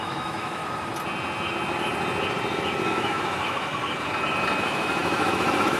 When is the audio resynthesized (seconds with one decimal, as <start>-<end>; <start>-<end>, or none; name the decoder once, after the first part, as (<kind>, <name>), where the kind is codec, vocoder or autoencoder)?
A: 0.0-0.6 (autoencoder, DAC-VAE); 2.9-3.7; 4.6-5.8